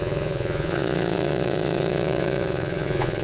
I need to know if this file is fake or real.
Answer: fake